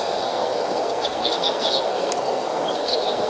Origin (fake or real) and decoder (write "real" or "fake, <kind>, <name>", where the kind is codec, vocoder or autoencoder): fake, codec, SNAC